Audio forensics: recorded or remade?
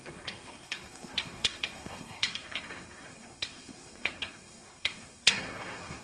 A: remade